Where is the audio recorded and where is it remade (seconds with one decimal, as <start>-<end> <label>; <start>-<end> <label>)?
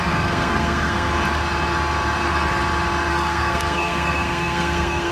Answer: 0.0-1.1 remade; 1.1-3.1 recorded; 3.1-5.1 remade